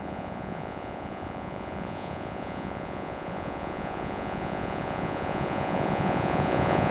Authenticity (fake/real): fake